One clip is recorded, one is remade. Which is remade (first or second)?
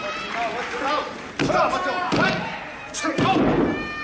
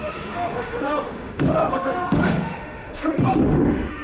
second